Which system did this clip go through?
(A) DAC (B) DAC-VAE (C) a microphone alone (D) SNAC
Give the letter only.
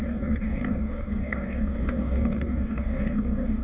A